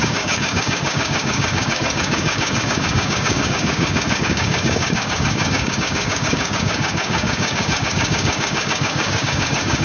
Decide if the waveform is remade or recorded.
remade